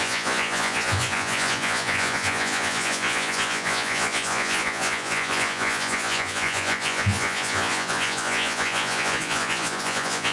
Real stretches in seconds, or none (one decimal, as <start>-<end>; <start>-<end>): none